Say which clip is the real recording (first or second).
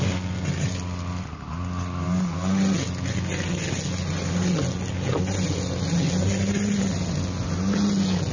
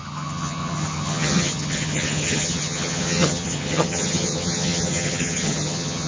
first